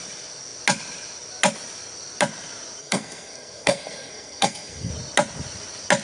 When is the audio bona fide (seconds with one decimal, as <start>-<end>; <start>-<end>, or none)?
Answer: 0.0-2.8; 4.9-6.0